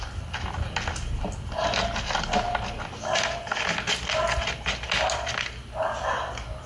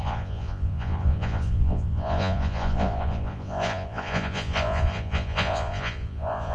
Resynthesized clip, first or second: second